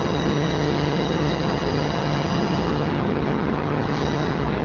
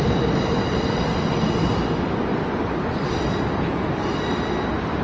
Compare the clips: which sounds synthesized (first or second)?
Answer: first